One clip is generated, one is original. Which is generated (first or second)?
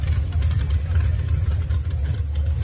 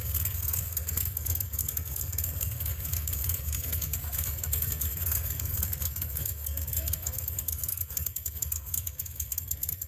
second